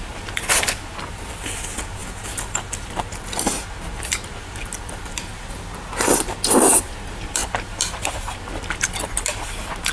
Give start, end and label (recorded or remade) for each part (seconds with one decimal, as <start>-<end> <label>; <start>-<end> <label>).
0.0-9.9 recorded